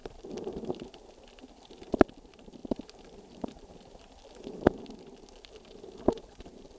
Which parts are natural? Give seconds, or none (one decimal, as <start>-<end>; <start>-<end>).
1.4-2.6; 4.8-6.8